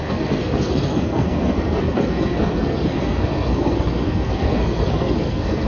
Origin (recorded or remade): remade